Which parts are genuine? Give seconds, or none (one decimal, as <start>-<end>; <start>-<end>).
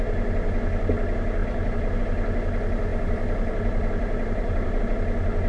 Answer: 0.0-1.4; 2.0-2.9; 4.8-5.5